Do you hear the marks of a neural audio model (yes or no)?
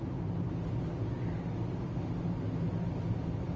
no